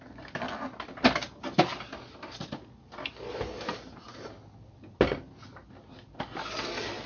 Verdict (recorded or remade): recorded